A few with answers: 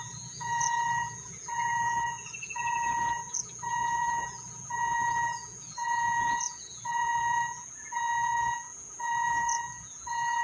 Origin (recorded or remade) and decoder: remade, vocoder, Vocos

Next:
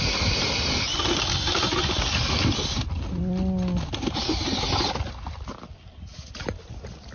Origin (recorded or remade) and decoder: recorded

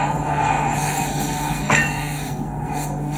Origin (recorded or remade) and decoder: remade, codec, SNAC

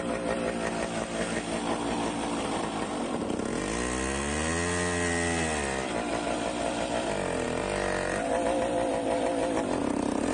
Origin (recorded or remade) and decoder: recorded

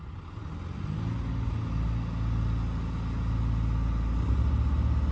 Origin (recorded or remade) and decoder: recorded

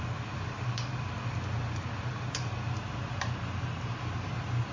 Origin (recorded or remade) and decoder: recorded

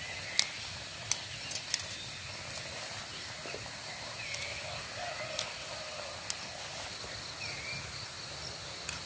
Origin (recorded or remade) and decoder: recorded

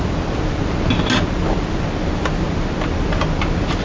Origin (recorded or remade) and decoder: recorded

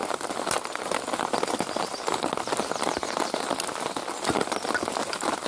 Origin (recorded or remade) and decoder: recorded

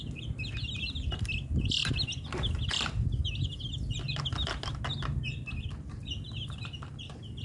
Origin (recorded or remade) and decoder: recorded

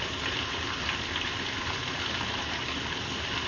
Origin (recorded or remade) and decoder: recorded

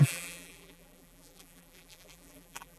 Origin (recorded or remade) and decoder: remade, vocoder, BigVGAN v2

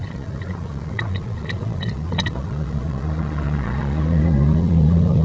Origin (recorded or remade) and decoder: remade, vocoder, Vocos